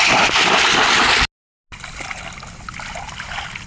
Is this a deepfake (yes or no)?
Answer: no